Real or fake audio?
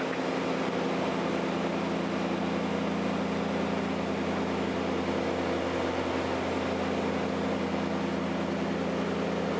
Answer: real